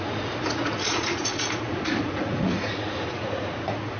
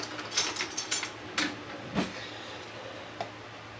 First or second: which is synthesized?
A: first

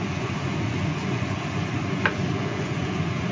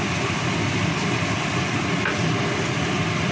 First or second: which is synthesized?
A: first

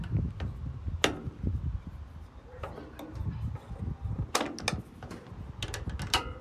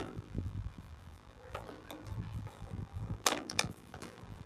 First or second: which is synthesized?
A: second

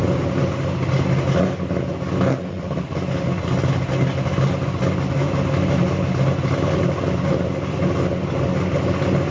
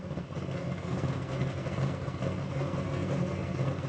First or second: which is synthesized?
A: second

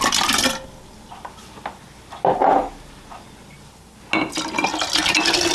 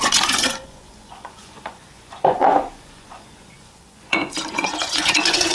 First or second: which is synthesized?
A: second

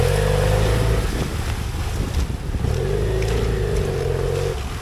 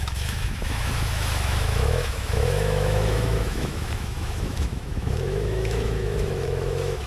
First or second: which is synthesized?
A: second